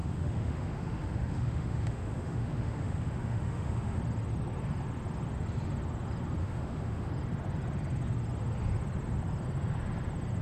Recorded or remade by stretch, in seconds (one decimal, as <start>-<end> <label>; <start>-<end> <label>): 0.0-4.0 remade; 4.0-6.4 recorded; 6.4-7.1 remade; 7.1-10.4 recorded